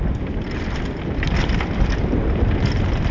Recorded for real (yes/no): yes